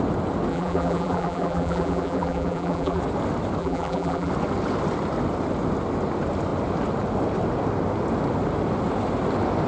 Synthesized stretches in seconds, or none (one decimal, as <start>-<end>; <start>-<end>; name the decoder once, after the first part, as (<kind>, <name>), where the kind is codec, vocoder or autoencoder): 0.5-3.0 (vocoder, BigVGAN v2); 3.6-4.3